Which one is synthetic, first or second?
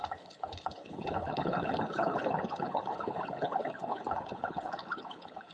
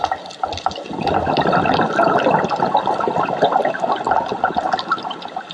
first